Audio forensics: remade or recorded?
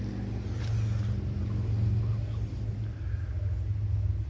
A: recorded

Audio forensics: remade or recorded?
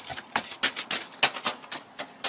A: recorded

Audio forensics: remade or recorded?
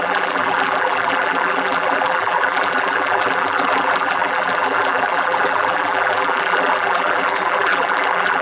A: remade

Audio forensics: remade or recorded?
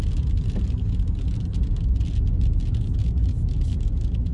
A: recorded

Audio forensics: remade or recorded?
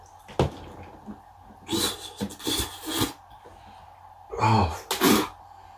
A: recorded